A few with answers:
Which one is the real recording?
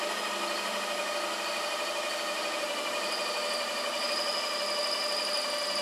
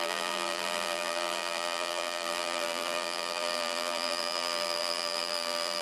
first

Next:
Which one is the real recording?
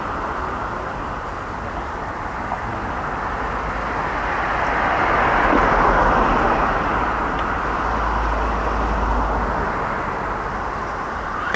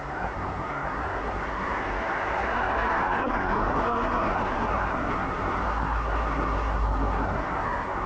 first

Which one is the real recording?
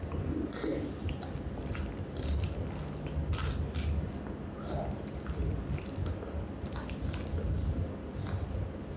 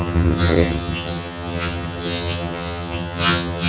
first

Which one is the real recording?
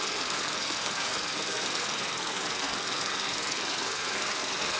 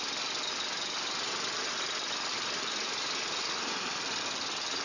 second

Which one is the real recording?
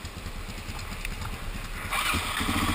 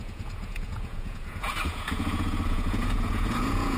first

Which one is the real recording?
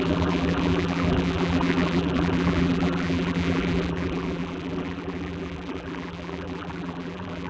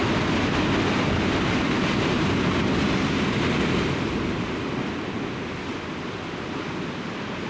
second